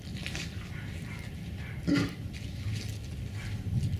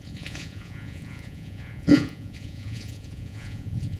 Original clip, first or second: first